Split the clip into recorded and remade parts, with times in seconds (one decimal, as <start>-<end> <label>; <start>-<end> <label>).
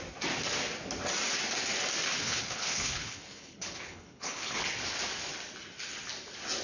0.0-2.2 recorded; 2.2-4.6 remade; 4.6-6.6 recorded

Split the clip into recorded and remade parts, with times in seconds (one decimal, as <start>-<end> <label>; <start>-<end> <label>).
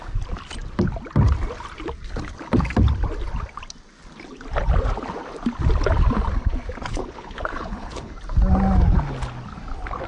0.0-6.9 recorded; 6.9-8.1 remade; 8.1-10.1 recorded